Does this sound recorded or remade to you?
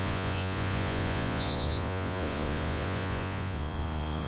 remade